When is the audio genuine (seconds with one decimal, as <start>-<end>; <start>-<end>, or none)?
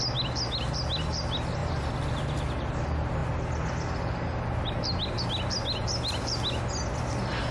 0.0-7.5